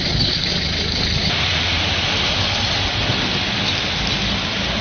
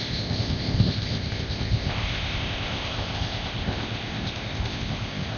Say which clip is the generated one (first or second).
second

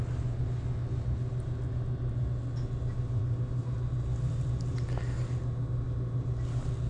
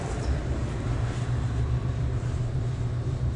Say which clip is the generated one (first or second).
second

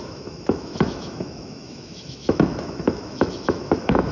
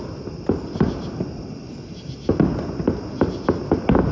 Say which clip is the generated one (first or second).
first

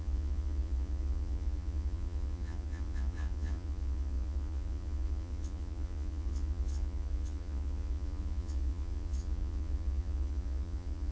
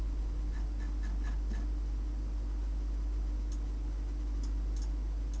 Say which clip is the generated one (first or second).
first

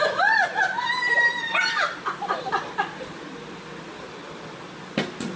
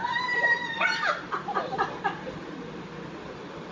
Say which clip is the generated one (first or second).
second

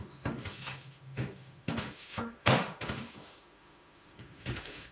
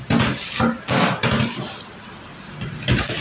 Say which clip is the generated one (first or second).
first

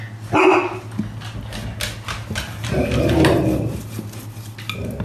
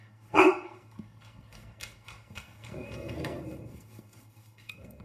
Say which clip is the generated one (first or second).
second